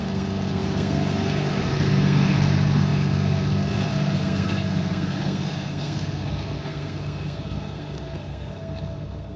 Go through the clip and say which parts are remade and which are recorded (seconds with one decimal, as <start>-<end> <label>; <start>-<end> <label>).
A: 0.0-9.4 remade